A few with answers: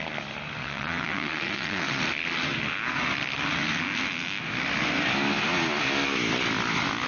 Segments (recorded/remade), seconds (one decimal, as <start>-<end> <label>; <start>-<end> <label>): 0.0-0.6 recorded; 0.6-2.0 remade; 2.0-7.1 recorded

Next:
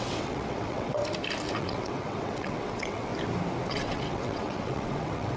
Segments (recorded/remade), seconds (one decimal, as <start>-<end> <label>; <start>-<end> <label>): 0.0-1.0 remade; 1.0-1.5 recorded; 1.5-3.1 remade; 3.1-3.7 recorded; 3.7-5.4 remade

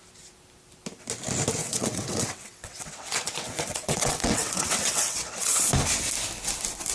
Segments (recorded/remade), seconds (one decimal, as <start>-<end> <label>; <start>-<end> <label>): 0.0-1.6 recorded; 1.6-5.7 remade; 5.7-6.9 recorded

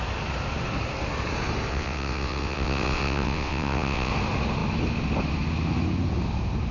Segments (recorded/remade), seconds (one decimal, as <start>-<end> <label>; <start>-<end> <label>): 0.0-1.7 recorded; 1.7-4.1 remade; 4.1-6.7 recorded